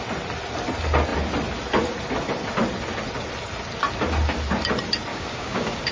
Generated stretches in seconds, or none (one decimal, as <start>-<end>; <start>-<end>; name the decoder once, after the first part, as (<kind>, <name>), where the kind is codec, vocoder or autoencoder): 5.1-5.9 (codec, DAC)